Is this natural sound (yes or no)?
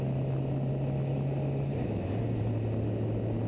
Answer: yes